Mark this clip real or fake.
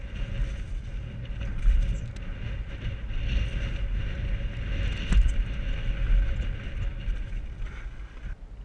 real